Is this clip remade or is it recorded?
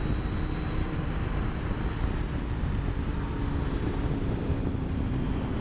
recorded